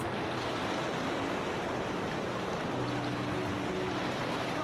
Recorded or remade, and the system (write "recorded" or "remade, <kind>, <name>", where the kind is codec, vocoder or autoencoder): recorded